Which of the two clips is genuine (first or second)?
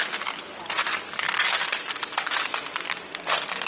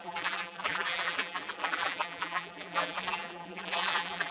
first